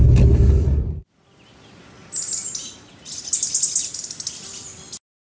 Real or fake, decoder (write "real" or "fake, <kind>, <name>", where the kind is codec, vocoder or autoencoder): real